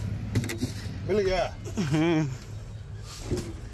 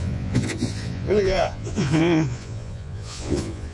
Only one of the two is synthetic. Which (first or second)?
second